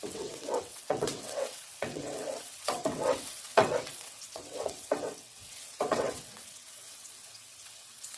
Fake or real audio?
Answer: fake